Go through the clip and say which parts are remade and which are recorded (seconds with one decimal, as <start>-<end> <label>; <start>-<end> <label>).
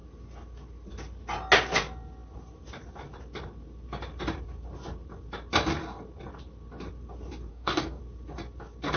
0.0-7.5 recorded; 7.5-8.0 remade; 8.0-9.0 recorded